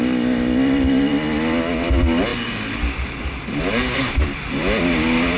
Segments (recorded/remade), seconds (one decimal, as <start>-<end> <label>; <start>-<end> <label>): 0.0-5.4 recorded